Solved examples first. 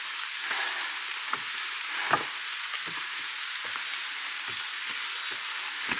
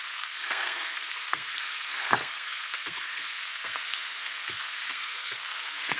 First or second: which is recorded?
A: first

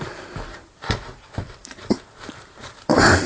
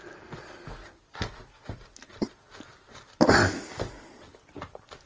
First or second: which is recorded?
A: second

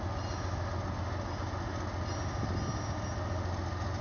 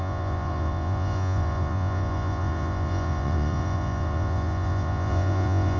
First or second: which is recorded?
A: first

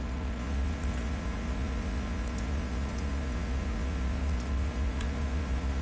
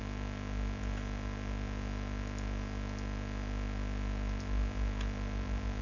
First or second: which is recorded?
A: second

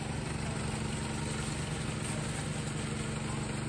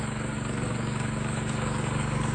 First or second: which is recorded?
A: first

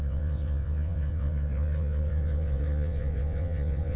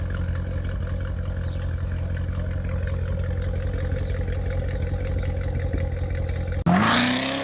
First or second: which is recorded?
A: second